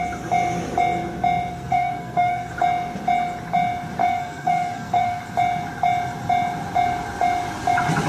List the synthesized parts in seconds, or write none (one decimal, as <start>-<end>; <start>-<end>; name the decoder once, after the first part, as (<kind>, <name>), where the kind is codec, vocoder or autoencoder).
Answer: 1.5-2.5 (codec, SNAC); 4.0-5.2

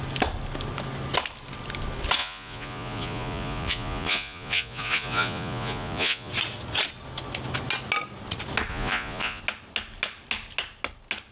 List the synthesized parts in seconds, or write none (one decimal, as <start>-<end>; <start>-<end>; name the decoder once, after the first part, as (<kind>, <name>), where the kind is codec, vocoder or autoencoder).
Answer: 2.2-6.3 (vocoder, Vocos); 8.7-9.4

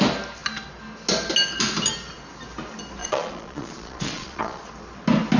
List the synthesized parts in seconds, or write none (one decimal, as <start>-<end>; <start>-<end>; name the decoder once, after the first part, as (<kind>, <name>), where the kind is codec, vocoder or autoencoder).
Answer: 3.0-4.7 (vocoder, Vocos)

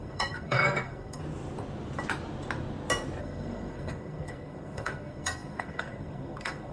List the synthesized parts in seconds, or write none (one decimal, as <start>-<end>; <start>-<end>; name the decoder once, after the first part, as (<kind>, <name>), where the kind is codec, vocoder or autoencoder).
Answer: 0.0-1.2 (codec, SNAC); 3.2-6.7

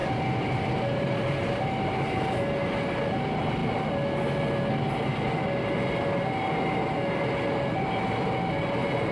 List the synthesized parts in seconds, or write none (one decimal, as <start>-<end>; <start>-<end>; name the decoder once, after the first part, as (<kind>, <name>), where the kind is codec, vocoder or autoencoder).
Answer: 0.0-2.2 (vocoder, BigVGAN v2)

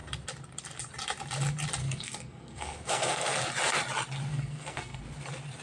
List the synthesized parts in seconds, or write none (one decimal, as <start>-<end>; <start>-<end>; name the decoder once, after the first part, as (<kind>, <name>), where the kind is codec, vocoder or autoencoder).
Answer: 1.8-3.4 (codec, SNAC); 4.3-5.0

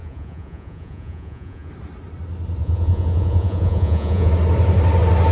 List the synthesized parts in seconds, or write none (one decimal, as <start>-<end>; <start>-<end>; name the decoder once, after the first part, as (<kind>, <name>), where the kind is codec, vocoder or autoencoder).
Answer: 0.0-1.7 (vocoder, Vocos); 2.6-4.3